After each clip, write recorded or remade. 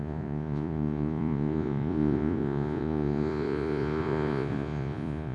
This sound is remade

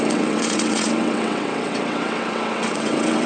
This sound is remade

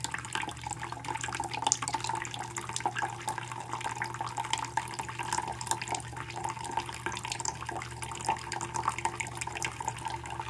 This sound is recorded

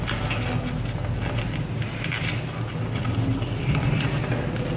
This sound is recorded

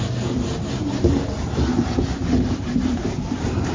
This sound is remade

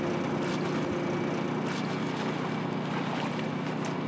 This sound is recorded